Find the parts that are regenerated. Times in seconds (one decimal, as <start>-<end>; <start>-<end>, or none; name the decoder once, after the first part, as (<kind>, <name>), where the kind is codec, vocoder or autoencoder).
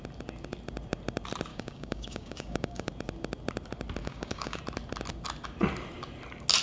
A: 1.5-2.9 (codec, DAC); 4.0-4.6